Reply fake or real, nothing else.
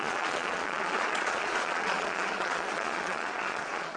fake